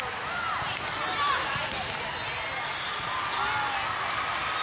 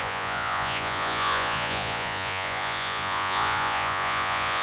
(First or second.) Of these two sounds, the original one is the first